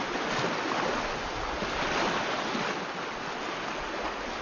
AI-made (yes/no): no